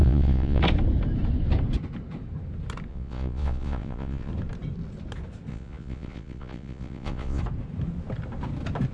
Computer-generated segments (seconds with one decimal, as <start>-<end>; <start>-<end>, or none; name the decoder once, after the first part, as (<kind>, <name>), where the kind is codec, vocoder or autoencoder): 0.0-0.6 (vocoder, Vocos); 2.9-4.3; 5.5-7.4